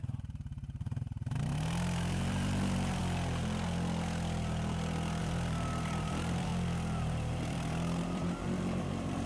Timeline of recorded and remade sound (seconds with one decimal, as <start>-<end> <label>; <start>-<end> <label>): 0.0-3.0 remade; 3.0-5.2 recorded; 5.2-6.5 remade; 6.5-7.0 recorded; 7.0-9.3 remade